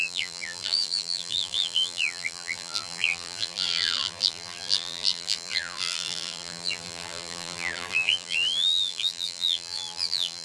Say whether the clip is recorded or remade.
remade